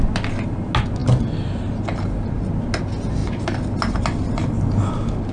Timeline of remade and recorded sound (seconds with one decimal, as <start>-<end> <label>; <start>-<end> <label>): 0.0-5.3 recorded